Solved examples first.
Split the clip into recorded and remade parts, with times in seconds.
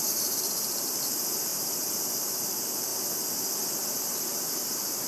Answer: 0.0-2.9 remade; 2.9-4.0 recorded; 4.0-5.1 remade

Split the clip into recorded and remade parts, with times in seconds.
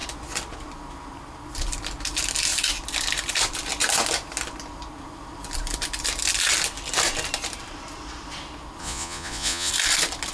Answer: 0.0-8.8 recorded; 8.8-9.7 remade; 9.7-10.3 recorded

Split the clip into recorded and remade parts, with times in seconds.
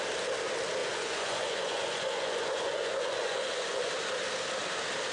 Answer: 0.0-0.8 recorded; 0.8-3.9 remade; 3.9-5.1 recorded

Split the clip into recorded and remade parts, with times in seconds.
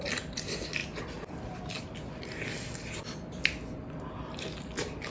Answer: 0.0-5.1 recorded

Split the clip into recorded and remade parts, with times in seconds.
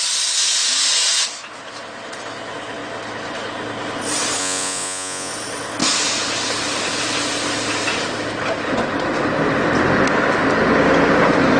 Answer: 0.0-4.4 recorded; 4.4-5.3 remade; 5.3-11.6 recorded